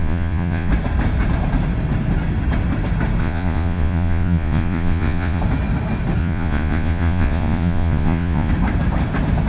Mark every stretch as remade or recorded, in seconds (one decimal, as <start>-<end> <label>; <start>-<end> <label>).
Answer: 0.0-0.7 remade; 0.7-3.2 recorded; 3.2-5.4 remade; 5.4-6.2 recorded; 6.2-8.5 remade; 8.5-9.5 recorded